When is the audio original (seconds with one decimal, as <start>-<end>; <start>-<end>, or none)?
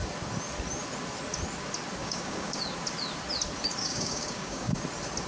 0.0-2.0; 2.6-3.8; 4.8-5.3